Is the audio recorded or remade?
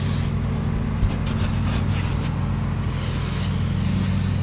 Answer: recorded